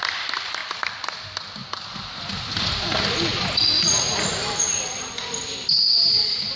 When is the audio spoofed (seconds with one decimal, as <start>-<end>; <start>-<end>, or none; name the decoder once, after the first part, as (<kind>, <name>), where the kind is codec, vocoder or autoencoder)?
0.0-0.6 (vocoder, BigVGAN v2); 1.2-1.6; 2.3-3.3